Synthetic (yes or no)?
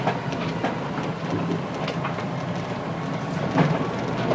no